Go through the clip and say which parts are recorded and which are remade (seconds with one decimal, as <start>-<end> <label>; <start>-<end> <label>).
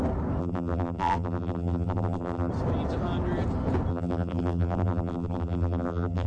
0.0-0.4 recorded; 0.4-2.5 remade; 2.5-3.9 recorded; 3.9-6.3 remade